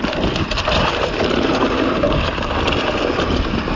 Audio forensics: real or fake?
fake